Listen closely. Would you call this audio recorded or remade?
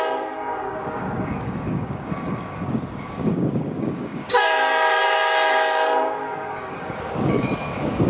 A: remade